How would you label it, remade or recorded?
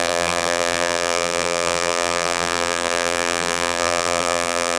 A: remade